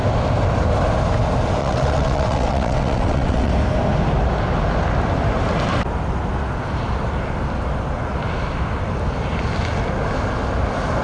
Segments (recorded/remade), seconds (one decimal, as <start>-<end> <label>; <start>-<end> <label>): 0.0-1.6 recorded; 1.6-3.5 remade; 3.5-11.0 recorded